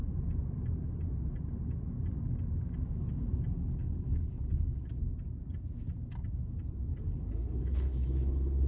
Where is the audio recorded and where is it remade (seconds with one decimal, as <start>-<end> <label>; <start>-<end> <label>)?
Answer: 0.0-3.8 recorded; 3.8-4.9 remade; 4.9-6.9 recorded; 6.9-8.7 remade